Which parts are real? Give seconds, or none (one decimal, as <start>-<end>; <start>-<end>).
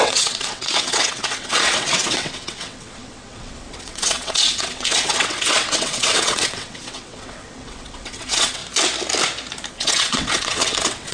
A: 8.6-9.7